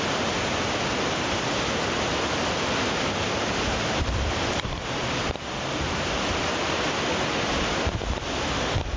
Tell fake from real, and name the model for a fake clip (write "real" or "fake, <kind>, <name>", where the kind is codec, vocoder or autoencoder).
real